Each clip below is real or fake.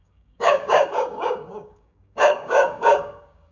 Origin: fake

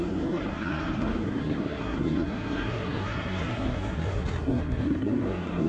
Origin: fake